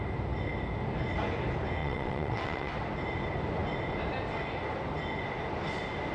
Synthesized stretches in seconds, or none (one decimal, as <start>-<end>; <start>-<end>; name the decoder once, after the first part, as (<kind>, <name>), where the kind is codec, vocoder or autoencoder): 1.8-2.7 (vocoder, WaveNeXt)